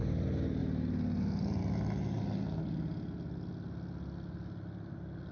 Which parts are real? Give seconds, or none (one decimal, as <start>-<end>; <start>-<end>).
0.0-5.3